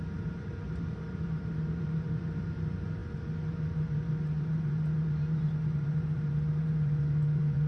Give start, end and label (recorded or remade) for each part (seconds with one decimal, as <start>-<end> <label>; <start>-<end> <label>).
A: 0.0-7.7 remade